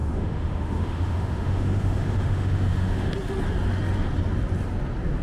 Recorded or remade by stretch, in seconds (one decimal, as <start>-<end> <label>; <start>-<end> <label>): 0.0-3.1 remade; 3.1-5.2 recorded

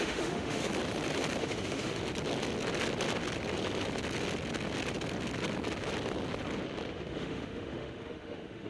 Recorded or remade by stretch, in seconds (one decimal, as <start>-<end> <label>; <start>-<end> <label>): 0.0-0.7 remade; 0.7-1.4 recorded; 1.4-2.0 remade; 2.0-6.9 recorded; 6.9-8.7 remade